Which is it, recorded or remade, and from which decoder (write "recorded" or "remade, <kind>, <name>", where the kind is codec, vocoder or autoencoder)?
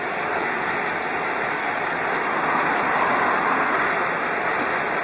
recorded